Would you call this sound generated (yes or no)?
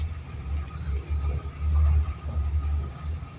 no